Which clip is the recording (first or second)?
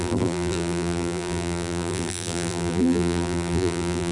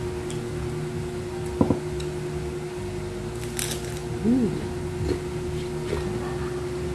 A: second